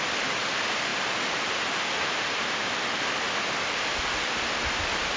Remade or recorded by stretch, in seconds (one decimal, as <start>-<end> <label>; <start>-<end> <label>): 0.0-5.2 recorded